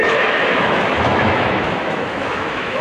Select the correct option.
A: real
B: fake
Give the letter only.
B